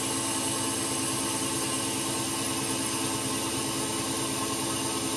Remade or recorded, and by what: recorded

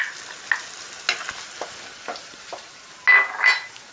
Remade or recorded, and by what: recorded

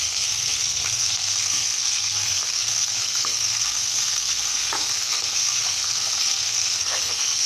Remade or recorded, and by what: remade, codec, SNAC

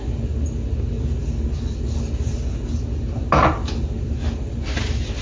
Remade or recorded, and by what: recorded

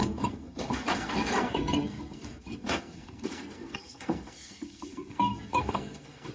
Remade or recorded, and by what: remade, codec, SNAC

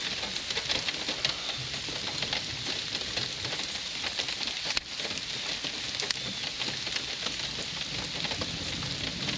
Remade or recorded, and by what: recorded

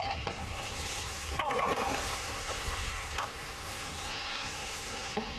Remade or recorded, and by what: remade, codec, SNAC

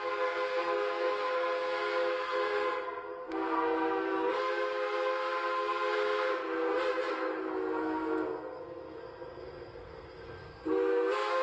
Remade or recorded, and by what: remade, codec, SNAC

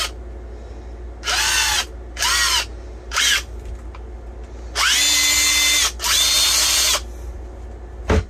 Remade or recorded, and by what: recorded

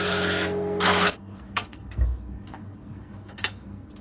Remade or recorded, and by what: remade, codec, SNAC